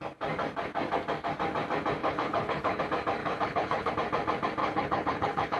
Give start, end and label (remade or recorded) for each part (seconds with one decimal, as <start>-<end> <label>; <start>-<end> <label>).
0.0-2.0 recorded; 2.0-2.8 remade; 2.8-3.2 recorded; 3.2-3.9 remade; 3.9-4.6 recorded; 4.6-5.6 remade